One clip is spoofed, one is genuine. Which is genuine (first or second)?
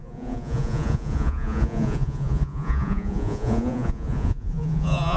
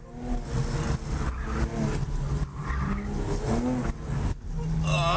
second